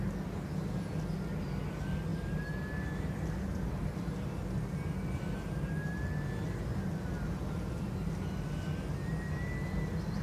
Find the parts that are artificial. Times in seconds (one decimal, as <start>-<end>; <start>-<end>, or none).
none